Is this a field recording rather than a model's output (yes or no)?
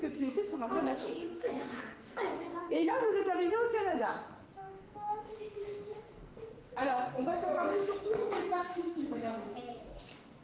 no